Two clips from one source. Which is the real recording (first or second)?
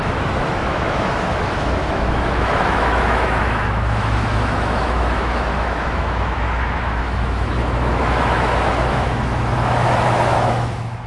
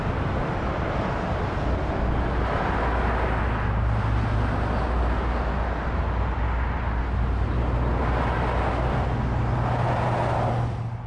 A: second